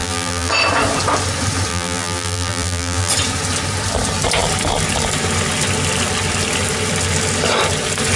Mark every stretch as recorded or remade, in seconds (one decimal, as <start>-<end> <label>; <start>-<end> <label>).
0.0-0.5 remade; 0.5-1.7 recorded; 1.7-3.1 remade; 3.1-8.2 recorded